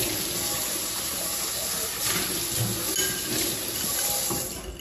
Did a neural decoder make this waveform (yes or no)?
no